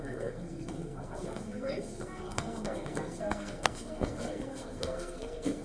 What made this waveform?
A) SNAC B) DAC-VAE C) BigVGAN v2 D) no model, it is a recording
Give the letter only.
A